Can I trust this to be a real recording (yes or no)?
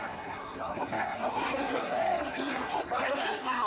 no